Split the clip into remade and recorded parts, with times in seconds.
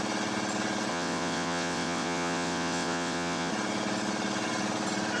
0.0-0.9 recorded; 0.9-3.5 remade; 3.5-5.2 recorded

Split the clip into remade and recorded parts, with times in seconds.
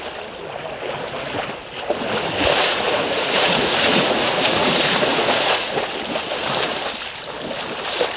0.0-2.6 recorded; 2.6-5.7 remade; 5.7-8.2 recorded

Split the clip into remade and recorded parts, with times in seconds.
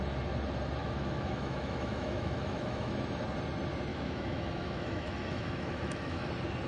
0.0-0.8 recorded; 0.8-2.9 remade; 2.9-3.9 recorded; 3.9-6.3 remade; 6.3-6.7 recorded